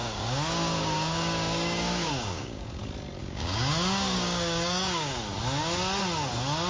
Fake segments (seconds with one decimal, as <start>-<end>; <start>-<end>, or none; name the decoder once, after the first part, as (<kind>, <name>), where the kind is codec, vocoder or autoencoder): 0.0-2.8 (codec, DAC); 3.2-5.2